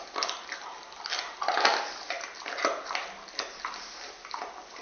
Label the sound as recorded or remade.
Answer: recorded